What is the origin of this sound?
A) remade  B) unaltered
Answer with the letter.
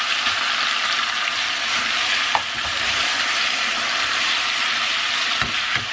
B